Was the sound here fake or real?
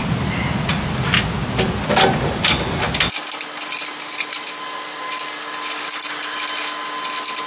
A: real